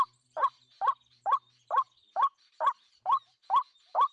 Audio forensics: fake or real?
real